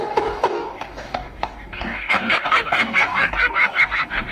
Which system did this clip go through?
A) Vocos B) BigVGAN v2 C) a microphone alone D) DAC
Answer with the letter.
D